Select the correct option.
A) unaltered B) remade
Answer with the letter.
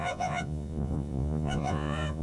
B